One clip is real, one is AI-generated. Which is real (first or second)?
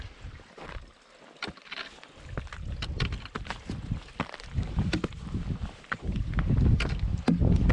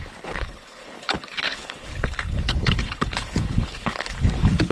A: first